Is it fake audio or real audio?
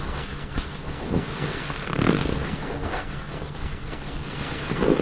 fake